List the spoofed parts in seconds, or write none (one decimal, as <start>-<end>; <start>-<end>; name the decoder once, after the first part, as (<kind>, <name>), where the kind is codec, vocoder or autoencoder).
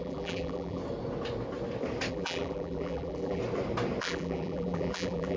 0.0-0.8 (vocoder, BigVGAN v2); 2.1-3.4; 4.0-5.4